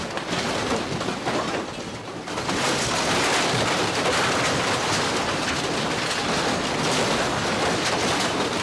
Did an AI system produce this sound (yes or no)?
no